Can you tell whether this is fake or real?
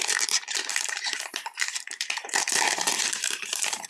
fake